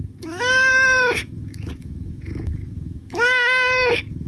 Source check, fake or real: fake